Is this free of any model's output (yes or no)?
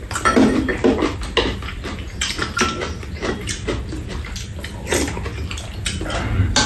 yes